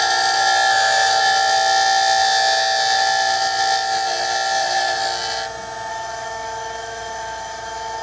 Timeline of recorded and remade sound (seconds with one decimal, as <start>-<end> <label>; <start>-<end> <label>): 0.0-5.9 recorded; 5.9-8.0 remade